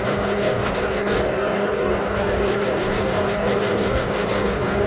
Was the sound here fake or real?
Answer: fake